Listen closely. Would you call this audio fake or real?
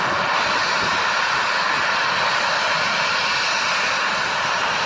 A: real